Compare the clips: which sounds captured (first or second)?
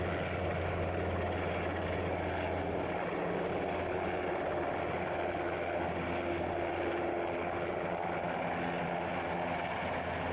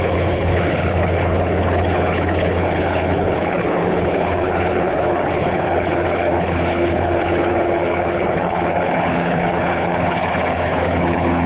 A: first